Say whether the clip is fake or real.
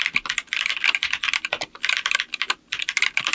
real